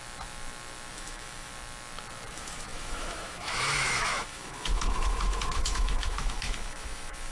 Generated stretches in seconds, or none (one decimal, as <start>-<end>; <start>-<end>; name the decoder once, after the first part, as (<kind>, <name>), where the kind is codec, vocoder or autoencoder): 0.9-1.5 (autoencoder, DAC-VAE); 2.3-7.3